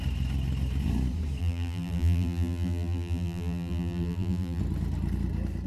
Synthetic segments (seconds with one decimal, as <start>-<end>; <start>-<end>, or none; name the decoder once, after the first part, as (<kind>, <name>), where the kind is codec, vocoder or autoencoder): 1.4-4.6 (vocoder, BigVGAN v2)